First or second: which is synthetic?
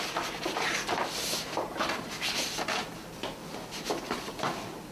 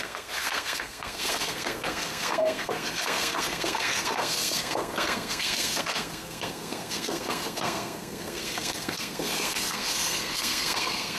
second